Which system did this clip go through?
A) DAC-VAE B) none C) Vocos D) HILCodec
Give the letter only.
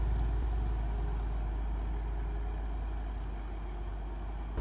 B